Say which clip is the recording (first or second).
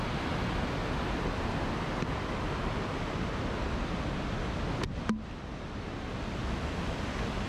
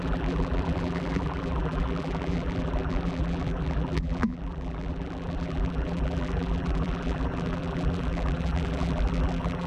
first